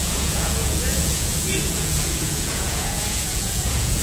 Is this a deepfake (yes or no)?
yes